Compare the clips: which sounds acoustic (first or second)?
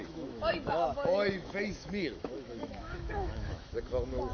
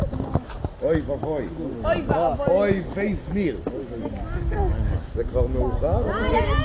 second